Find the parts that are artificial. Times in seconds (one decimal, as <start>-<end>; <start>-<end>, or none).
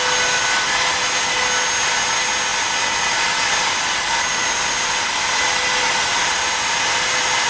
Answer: none